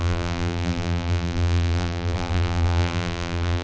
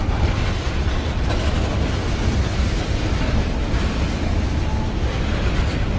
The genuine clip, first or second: second